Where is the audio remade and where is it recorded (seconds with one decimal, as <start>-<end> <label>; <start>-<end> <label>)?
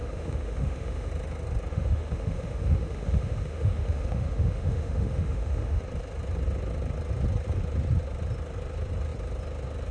0.0-1.1 remade; 1.1-1.7 recorded; 1.7-5.8 remade; 5.8-9.9 recorded